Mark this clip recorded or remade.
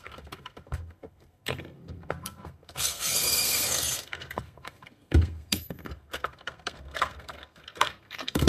remade